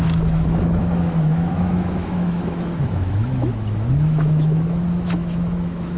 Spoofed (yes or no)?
yes